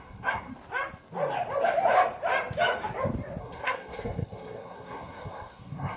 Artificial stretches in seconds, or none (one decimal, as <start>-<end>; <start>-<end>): 0.0-0.5; 3.4-6.0